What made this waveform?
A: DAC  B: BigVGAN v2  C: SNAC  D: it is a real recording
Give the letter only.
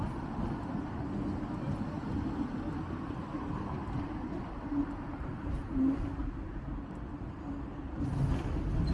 D